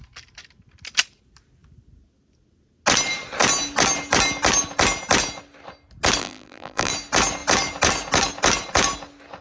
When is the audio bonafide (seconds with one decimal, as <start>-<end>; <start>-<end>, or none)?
0.0-6.2; 6.9-9.4